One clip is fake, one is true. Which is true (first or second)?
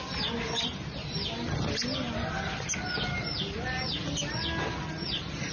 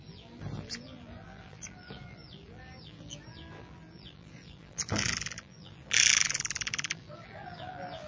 first